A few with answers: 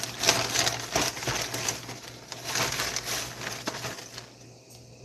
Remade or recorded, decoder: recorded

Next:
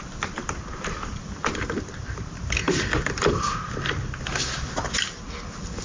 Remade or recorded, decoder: remade, vocoder, BigVGAN v2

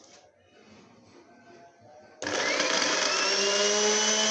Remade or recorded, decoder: recorded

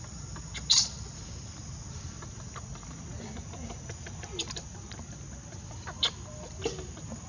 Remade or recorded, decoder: recorded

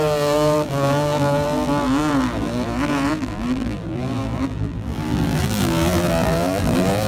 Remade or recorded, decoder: remade, vocoder, BigVGAN v2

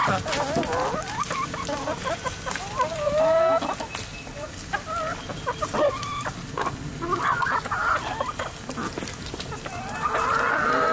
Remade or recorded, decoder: recorded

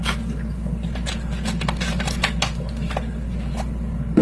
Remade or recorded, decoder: recorded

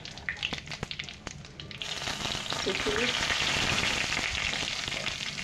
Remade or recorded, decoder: remade, vocoder, BigVGAN v2